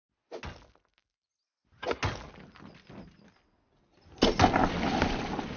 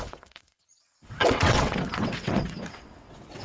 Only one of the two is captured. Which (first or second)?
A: first